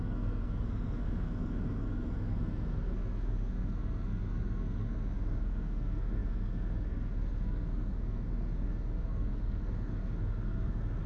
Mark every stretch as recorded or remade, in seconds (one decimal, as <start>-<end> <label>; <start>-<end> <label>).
0.0-11.1 remade